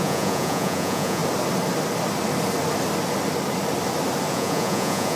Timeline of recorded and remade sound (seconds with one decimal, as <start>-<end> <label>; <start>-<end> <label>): 0.0-1.2 remade; 1.2-4.3 recorded; 4.3-5.2 remade